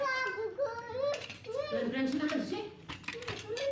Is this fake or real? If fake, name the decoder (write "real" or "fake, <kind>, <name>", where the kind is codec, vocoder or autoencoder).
fake, vocoder, BigVGAN v2